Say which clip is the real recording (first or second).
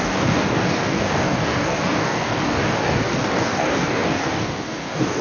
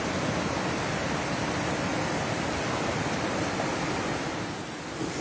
second